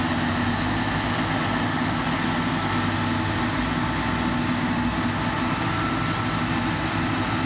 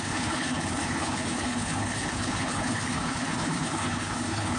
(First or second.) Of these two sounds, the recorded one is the first